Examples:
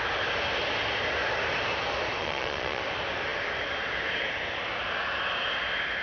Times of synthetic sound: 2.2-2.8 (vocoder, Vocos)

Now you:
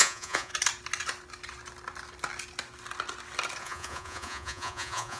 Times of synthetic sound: 0.0-0.5 (vocoder, Vocos); 3.6-5.2

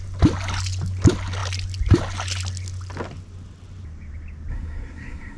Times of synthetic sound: 4.5-5.4 (codec, SNAC)

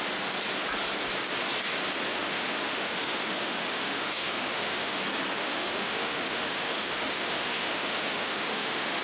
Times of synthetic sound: 2.1-5.0 (autoencoder, DAC-VAE); 5.4-9.0